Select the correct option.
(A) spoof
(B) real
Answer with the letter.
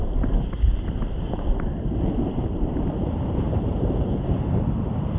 A